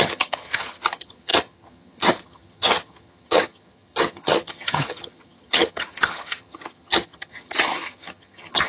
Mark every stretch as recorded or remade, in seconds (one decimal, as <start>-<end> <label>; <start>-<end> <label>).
0.0-8.7 remade